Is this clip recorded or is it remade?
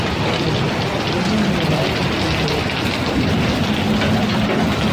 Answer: recorded